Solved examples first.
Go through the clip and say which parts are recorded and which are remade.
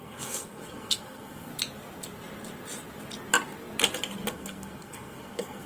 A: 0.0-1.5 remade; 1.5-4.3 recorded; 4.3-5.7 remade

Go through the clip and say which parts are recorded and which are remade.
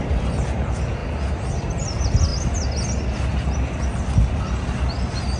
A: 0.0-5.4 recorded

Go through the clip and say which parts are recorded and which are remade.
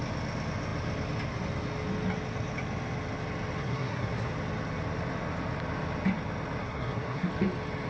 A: 0.0-3.6 recorded; 3.6-4.3 remade; 4.3-6.6 recorded; 6.6-7.3 remade; 7.3-7.9 recorded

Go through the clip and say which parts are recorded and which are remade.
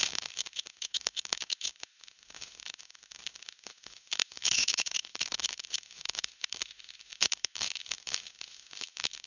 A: 0.0-9.3 remade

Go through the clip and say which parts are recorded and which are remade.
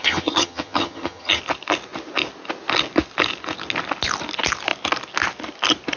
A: 0.0-1.4 remade; 1.4-6.0 recorded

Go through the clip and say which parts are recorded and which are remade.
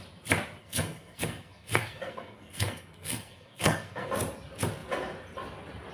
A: 0.0-0.6 recorded; 0.6-4.1 remade; 4.1-5.9 recorded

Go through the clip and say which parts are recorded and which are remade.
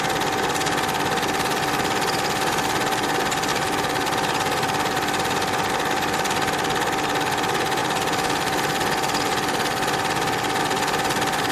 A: 0.0-3.5 recorded; 3.5-5.7 remade; 5.7-7.8 recorded; 7.8-10.6 remade; 10.6-11.5 recorded